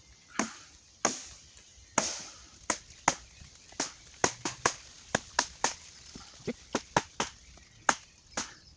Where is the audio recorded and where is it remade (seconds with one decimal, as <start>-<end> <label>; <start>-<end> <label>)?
0.0-8.8 recorded